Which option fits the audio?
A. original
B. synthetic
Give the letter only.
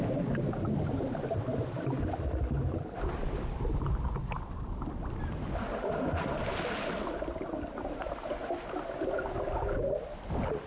A